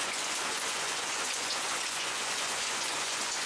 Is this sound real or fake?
fake